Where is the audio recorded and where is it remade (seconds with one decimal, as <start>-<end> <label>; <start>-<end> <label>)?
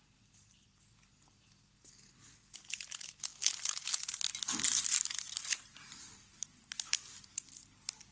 0.0-8.1 recorded